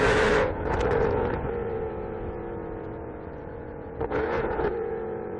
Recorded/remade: remade